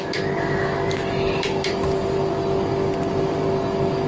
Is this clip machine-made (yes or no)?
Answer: no